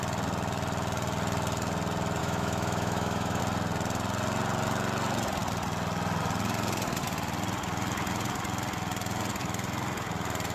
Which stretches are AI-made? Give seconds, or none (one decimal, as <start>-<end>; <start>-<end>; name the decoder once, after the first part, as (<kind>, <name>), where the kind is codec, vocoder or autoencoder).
2.2-3.4 (autoencoder, DAC-VAE)